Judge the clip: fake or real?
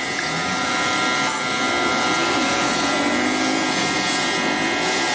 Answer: real